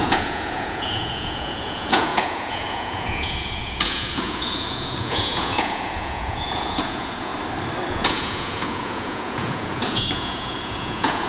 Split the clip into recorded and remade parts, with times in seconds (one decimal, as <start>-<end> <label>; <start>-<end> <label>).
0.0-7.3 remade; 7.3-7.9 recorded; 7.9-11.3 remade